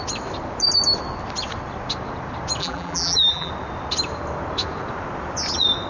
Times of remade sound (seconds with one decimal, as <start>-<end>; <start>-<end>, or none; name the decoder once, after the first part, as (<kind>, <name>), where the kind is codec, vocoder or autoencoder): 2.6-3.5 (vocoder, BigVGAN v2)